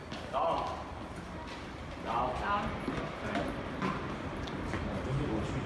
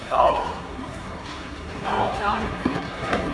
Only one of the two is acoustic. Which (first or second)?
first